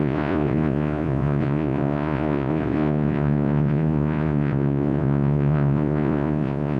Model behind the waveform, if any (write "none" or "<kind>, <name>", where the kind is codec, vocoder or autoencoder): vocoder, Vocos